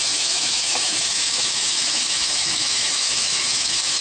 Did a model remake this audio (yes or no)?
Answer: yes